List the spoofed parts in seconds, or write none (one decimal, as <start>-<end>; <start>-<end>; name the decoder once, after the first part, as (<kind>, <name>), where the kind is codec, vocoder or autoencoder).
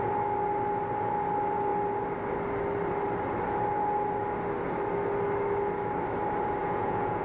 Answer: 6.6-7.2 (vocoder, Vocos)